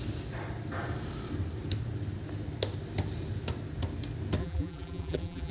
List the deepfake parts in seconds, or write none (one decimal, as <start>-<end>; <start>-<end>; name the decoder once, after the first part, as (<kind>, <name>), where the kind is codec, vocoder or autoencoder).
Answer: 4.4-5.5 (vocoder, BigVGAN v2)